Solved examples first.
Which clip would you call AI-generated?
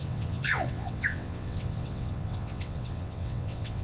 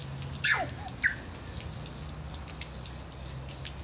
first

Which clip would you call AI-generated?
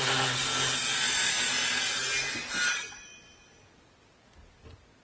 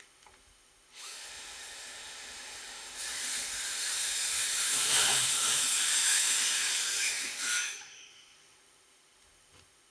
second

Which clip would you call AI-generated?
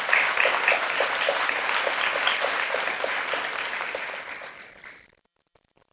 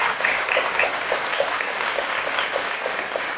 second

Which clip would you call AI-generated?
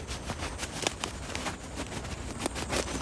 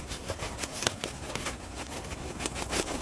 second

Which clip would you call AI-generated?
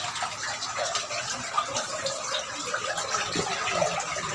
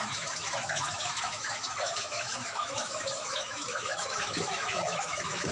second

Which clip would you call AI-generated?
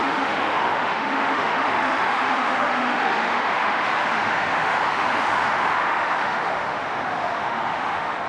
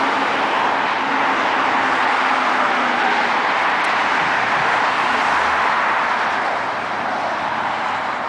first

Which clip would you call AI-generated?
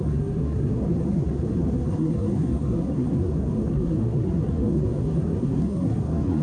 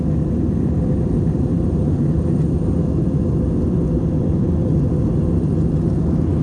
first